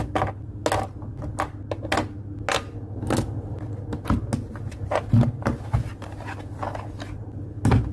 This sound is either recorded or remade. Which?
recorded